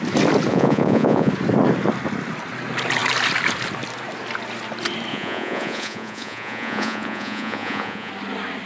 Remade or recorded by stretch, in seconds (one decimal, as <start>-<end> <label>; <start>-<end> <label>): 0.0-0.5 recorded; 0.5-1.3 remade; 1.3-5.1 recorded; 5.1-8.1 remade; 8.1-8.7 recorded